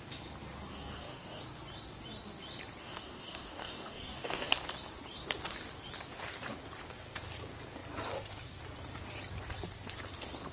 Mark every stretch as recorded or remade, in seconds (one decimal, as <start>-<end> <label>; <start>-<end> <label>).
0.0-0.7 recorded; 0.7-1.4 remade; 1.4-2.8 recorded; 2.8-4.5 remade; 4.5-10.5 recorded